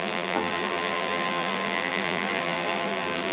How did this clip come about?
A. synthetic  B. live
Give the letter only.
A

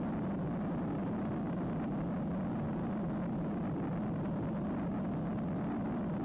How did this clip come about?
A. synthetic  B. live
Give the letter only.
B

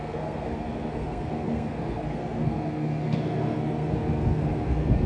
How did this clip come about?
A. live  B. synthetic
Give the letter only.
B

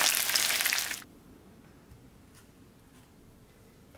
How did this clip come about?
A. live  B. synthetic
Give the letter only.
A